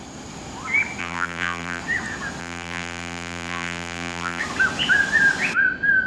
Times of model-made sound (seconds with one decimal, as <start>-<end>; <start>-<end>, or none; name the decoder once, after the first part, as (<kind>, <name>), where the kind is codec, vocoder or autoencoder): 1.0-1.8 (vocoder, BigVGAN v2); 2.4-4.4

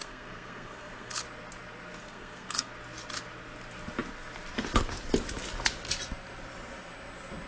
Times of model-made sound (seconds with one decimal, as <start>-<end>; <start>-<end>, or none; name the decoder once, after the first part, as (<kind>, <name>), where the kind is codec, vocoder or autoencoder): 0.0-1.2 (codec, SNAC); 2.0-2.7

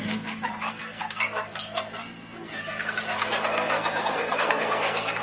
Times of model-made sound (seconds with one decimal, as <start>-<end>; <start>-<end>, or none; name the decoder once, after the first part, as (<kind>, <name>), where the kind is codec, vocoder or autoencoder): 0.0-5.2 (codec, SNAC)

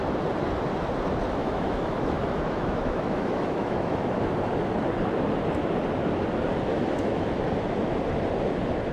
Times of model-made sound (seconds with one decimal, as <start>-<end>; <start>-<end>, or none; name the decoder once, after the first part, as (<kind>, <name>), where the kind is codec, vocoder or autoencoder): 1.4-4.3 (autoencoder, DAC-VAE); 6.7-7.4

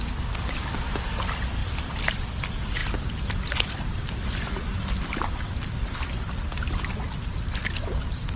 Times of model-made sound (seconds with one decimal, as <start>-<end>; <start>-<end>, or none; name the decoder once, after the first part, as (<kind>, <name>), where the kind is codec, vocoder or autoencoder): none